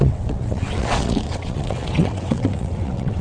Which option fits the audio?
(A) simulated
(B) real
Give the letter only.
A